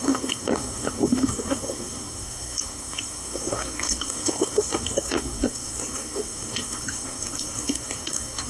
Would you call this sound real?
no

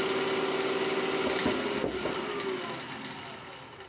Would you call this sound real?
yes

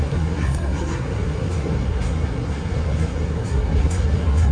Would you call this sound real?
no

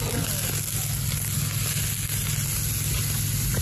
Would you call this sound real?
yes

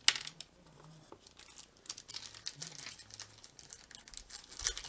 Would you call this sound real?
yes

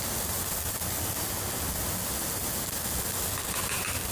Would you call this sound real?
yes